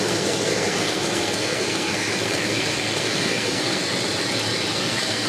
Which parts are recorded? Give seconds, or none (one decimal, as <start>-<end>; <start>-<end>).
3.8-4.7